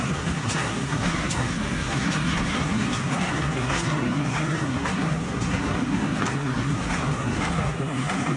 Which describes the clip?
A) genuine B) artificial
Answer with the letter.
B